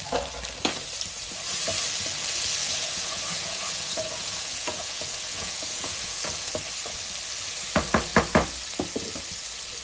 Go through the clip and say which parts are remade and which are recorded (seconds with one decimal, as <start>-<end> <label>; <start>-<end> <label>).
0.0-2.6 recorded; 2.6-6.5 remade; 6.5-9.8 recorded